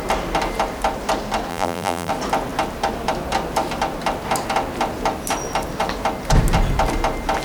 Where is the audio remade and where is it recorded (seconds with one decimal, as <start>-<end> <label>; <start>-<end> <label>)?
0.0-1.5 recorded; 1.5-2.1 remade; 2.1-7.4 recorded